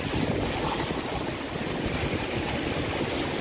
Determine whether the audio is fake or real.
real